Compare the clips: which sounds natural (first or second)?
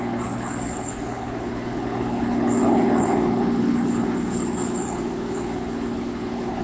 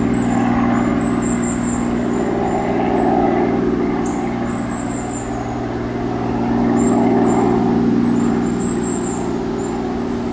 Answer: second